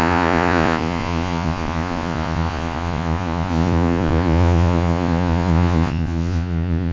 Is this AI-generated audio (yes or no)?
yes